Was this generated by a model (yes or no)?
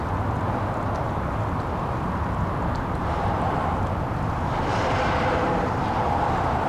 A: yes